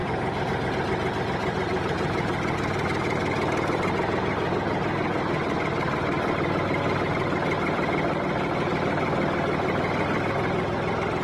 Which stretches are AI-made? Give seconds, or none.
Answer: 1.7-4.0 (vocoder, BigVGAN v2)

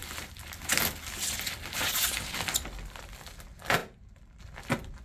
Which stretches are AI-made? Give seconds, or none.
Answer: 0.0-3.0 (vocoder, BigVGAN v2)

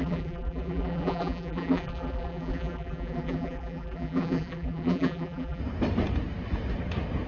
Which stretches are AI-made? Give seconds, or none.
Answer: 0.0-5.6 (vocoder, BigVGAN v2)

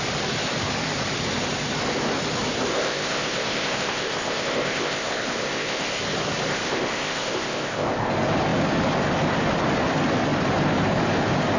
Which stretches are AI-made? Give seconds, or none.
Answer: 2.7-6.0 (codec, ZipCodec); 6.5-8.1

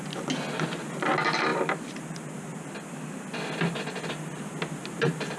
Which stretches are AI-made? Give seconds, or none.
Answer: 1.5-3.4 (vocoder, BigVGAN v2)

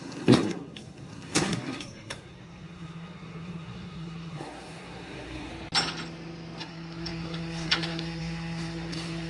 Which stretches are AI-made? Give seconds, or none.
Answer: 0.0-5.5 (codec, SNAC); 6.6-9.3